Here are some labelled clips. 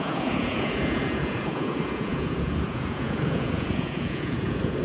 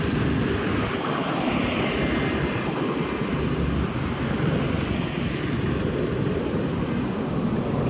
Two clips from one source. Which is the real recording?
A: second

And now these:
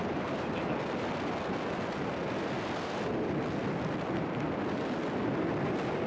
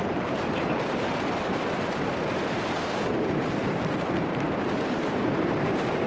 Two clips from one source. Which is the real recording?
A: first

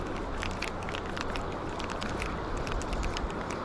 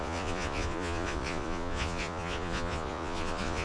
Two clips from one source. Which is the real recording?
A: first